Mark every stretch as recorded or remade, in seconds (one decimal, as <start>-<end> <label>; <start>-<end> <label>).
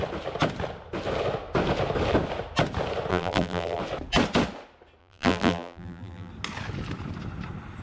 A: 0.0-3.1 recorded; 3.1-3.8 remade; 3.8-5.0 recorded; 5.0-6.3 remade; 6.3-7.8 recorded